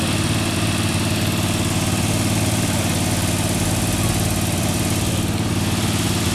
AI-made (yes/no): no